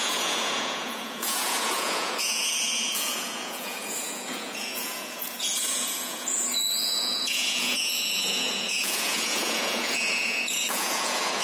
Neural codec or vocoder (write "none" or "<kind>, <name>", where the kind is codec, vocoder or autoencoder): vocoder, Vocos